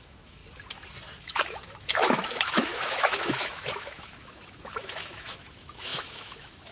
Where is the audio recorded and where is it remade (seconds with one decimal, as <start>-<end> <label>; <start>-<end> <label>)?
0.0-0.4 remade; 0.4-1.2 recorded; 1.2-6.7 remade